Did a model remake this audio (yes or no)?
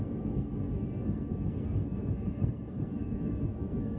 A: yes